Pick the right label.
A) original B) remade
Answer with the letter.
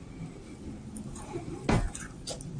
A